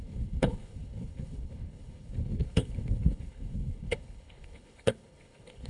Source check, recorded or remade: remade